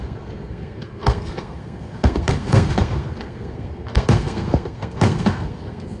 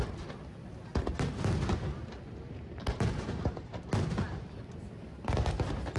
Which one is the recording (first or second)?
second